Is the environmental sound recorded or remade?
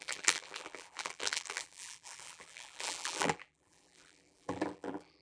remade